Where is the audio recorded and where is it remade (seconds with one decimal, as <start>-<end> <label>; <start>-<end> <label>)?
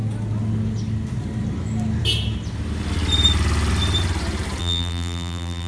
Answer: 0.0-4.6 recorded; 4.6-5.7 remade